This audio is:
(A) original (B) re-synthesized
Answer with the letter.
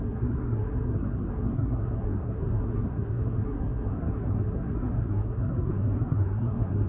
B